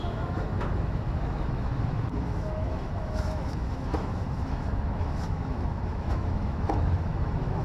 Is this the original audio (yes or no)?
no